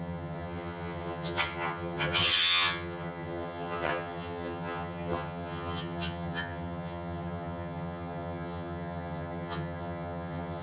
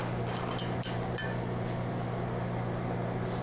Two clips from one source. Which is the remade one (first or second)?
first